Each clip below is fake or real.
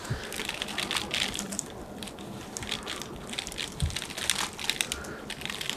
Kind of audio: real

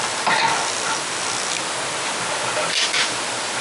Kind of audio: real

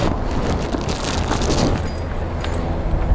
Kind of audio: real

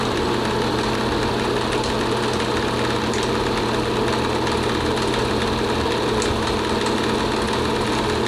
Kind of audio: real